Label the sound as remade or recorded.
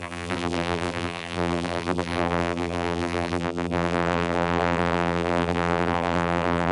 remade